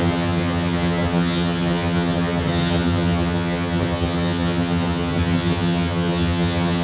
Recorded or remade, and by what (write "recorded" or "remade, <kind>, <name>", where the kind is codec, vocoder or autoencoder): remade, vocoder, HiFi-GAN